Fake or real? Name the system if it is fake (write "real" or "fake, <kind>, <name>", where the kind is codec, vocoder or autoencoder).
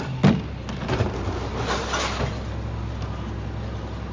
real